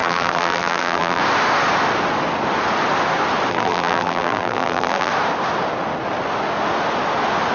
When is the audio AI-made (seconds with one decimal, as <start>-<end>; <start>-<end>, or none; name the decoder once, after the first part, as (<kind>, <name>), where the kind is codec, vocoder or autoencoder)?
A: 0.0-1.2 (vocoder, BigVGAN v2); 3.5-5.1